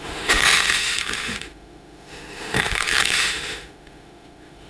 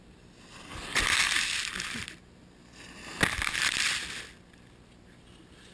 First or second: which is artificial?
first